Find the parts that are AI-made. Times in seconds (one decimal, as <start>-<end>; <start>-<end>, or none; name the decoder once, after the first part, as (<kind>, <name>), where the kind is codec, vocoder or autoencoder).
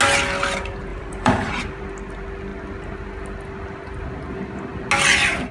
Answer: 0.9-1.8 (vocoder, BigVGAN v2)